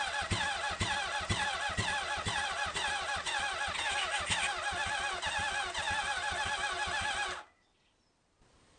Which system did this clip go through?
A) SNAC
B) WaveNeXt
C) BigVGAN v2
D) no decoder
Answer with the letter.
D